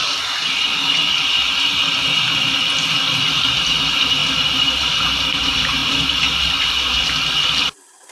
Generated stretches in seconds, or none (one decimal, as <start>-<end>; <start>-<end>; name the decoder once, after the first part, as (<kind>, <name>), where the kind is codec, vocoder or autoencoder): 2.9-5.8 (vocoder, BigVGAN v2)